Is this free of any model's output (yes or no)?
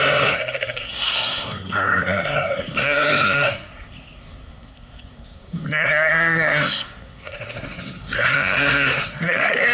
no